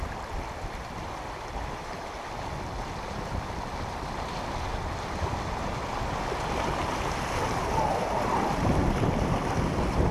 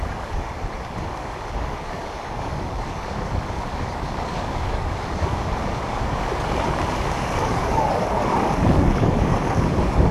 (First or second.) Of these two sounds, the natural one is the first